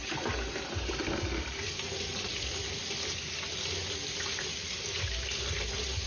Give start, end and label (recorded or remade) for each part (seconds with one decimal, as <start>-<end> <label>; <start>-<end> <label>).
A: 0.0-2.6 remade; 2.6-6.1 recorded

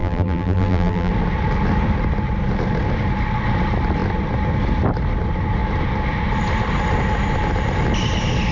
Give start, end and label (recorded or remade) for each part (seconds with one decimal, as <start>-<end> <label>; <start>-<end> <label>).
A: 0.0-1.1 remade; 1.1-8.5 recorded

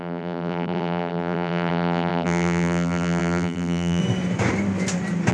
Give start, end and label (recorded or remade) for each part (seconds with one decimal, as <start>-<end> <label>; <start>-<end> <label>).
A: 0.0-4.0 remade; 4.0-5.3 recorded